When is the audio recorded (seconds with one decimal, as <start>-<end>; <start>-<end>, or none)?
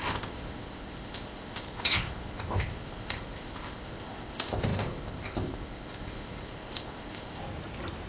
7.4-8.1